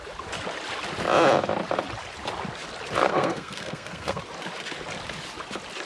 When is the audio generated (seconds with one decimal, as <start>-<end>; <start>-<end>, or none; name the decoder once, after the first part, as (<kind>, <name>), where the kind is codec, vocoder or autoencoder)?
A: 3.0-4.2 (codec, SNAC)